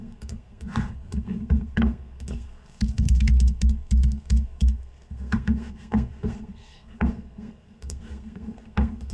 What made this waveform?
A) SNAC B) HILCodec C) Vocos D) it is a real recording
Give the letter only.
A